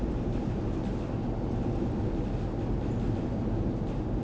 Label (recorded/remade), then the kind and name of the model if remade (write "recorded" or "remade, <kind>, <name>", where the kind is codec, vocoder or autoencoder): recorded